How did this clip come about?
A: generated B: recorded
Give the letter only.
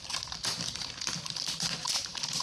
B